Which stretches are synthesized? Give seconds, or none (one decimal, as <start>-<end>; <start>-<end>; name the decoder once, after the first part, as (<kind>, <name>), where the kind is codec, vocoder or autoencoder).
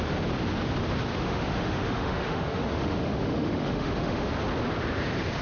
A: 1.1-4.3 (autoencoder, DAC-VAE)